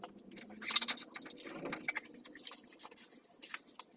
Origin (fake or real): real